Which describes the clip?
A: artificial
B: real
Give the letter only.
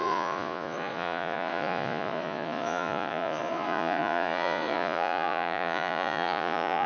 A